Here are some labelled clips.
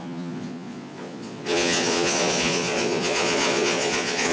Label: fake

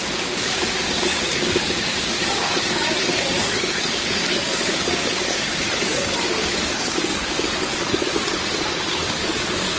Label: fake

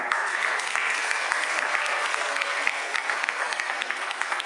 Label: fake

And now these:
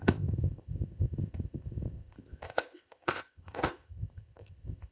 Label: fake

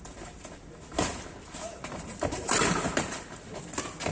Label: real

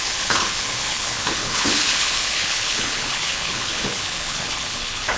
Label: fake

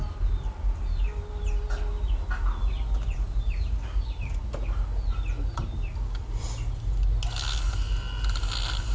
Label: real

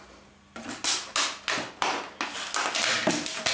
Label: real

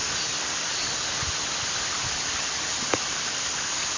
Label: real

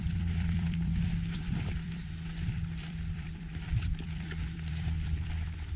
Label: fake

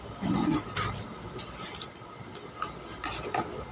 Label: real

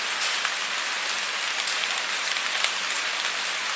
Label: real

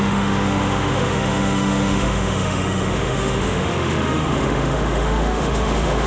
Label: fake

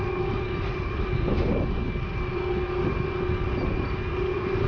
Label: real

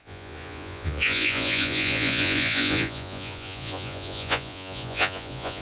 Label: fake